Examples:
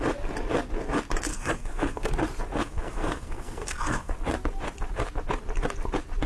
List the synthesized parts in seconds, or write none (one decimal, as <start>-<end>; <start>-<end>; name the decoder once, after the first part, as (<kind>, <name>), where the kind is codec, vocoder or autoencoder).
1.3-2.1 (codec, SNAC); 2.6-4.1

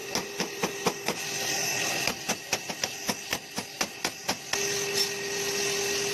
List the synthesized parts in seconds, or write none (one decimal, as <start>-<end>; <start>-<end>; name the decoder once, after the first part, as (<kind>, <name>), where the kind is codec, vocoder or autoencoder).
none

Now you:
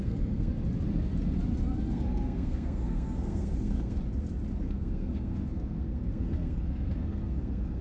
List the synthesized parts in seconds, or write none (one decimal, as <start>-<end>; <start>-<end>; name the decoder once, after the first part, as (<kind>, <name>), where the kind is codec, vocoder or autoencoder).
0.0-0.5 (codec, SNAC); 1.9-4.0; 4.6-7.8

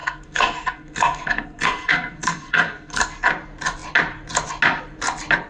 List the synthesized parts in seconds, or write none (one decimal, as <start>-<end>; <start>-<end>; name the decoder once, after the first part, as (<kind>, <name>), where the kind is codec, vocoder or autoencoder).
0.0-3.3 (codec, SNAC)

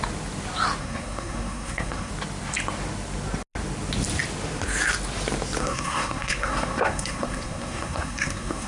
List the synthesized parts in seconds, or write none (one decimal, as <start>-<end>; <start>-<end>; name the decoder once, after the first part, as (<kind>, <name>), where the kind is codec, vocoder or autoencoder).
0.8-2.1 (codec, SNAC); 5.6-8.7

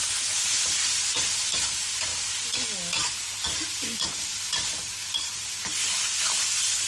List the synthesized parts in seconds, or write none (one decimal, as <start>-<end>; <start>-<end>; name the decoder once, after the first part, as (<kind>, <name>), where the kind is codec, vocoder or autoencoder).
none

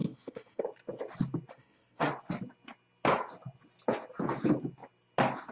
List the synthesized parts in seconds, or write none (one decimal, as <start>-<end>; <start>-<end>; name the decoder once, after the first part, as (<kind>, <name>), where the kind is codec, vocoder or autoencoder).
0.0-0.6 (codec, SNAC); 1.5-2.1